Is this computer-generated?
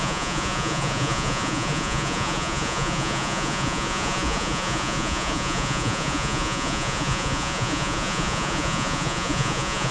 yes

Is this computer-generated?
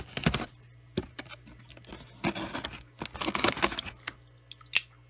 no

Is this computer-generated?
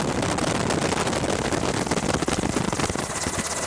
no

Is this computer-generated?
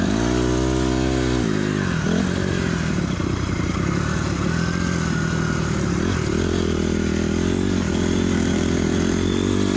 no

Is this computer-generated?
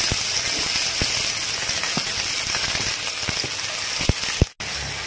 no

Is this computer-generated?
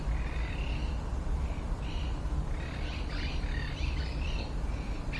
no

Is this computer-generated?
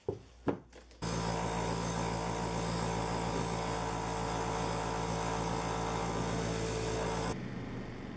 no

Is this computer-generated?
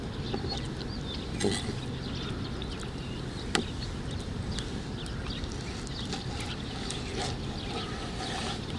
no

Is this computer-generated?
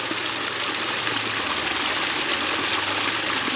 no